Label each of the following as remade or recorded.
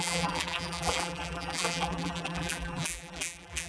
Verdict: remade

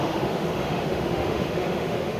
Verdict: remade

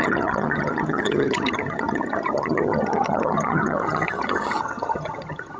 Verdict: remade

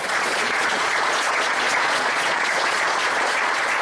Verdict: remade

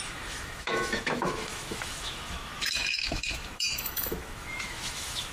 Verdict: remade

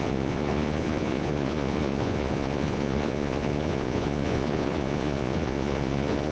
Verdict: remade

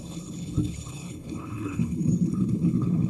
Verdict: remade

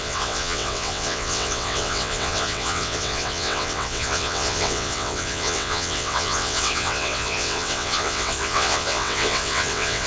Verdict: remade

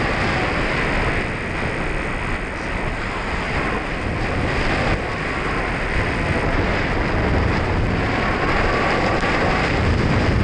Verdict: recorded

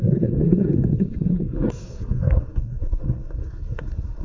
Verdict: remade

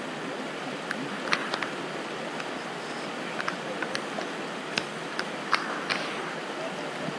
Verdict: recorded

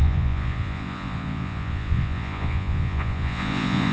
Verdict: remade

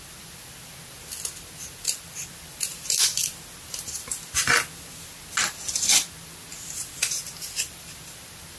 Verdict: recorded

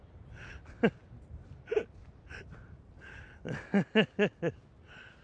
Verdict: recorded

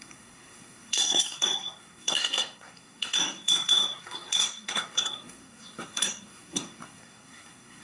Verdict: remade